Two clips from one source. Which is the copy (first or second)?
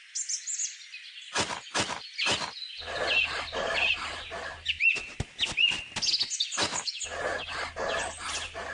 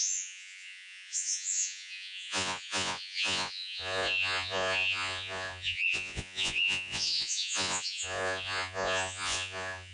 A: second